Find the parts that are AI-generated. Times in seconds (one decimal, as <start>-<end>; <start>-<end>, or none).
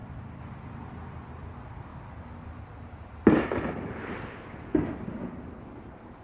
none